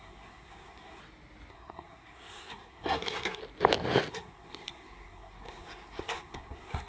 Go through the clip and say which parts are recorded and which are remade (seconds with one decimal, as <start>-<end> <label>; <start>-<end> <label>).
0.0-1.0 remade; 1.0-1.5 recorded; 1.5-3.4 remade; 3.4-4.1 recorded; 4.1-6.9 remade